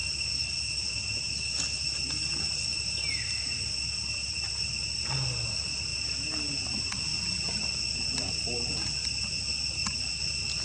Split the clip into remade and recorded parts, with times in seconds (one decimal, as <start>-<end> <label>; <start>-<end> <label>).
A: 0.0-2.7 recorded; 2.7-3.6 remade; 3.6-10.6 recorded